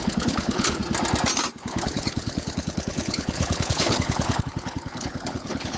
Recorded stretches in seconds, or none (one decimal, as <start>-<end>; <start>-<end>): 0.8-1.6